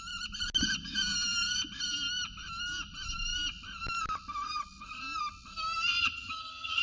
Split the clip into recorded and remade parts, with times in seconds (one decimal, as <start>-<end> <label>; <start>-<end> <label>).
0.0-6.0 recorded; 6.0-6.8 remade